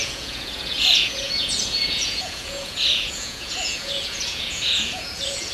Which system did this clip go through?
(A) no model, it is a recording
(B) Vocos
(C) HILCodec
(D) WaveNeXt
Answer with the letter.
B